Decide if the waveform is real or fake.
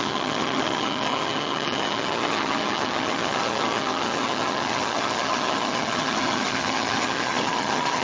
fake